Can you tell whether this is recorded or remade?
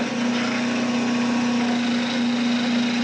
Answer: recorded